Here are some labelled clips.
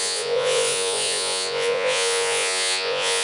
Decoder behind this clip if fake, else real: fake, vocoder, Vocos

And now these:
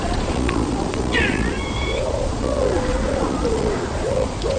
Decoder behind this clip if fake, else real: fake, vocoder, Vocos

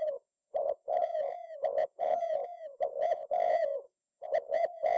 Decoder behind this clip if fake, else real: fake, vocoder, Vocos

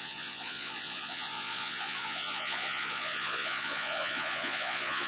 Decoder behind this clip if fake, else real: fake, vocoder, Vocos